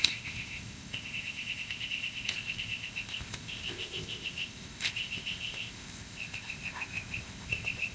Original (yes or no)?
no